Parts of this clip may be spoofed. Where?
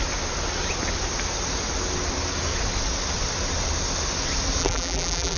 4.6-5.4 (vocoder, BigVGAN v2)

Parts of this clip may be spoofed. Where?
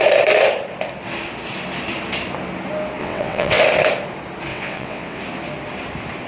3.0-3.6 (vocoder, WaveNeXt); 4.5-5.2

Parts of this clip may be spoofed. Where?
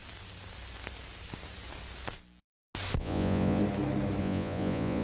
3.0-3.6 (vocoder, Vocos); 4.2-5.0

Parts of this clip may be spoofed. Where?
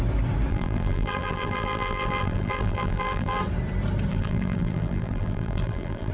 0.5-3.4 (vocoder, BigVGAN v2); 4.1-6.1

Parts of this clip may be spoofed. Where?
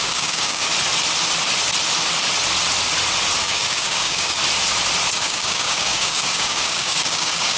0.0-0.7 (codec, DAC); 3.4-4.4; 5.1-7.6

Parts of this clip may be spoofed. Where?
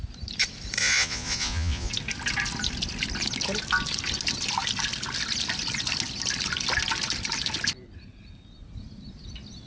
0.8-1.9 (vocoder, Vocos)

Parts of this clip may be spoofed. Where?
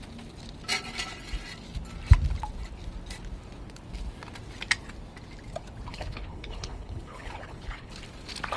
5.9-7.9 (codec, HILCodec)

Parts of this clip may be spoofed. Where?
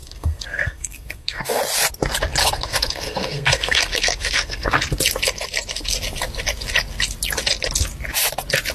0.0-1.6 (codec, SNAC); 2.4-4.7